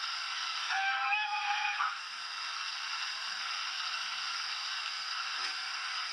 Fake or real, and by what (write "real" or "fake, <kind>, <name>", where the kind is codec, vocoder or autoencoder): fake, codec, SNAC